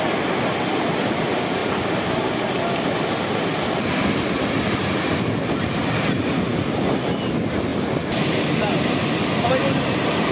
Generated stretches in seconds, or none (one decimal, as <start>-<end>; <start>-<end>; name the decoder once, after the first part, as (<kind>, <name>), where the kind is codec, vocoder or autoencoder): none